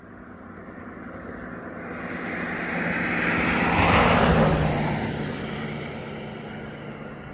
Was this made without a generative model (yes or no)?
yes